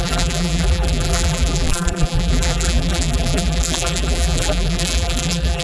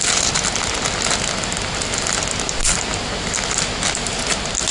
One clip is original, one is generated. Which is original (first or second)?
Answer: second